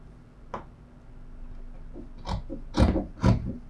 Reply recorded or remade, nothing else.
recorded